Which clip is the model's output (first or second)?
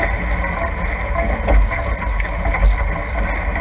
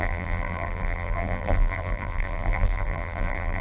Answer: second